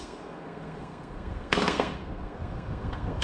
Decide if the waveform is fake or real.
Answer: fake